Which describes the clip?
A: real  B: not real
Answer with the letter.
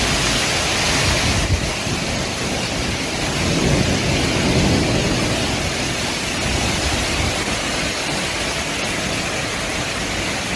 A